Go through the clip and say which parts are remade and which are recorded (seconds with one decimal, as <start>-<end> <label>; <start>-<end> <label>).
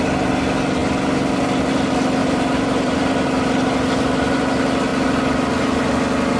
0.0-2.2 recorded; 2.2-3.1 remade; 3.1-6.4 recorded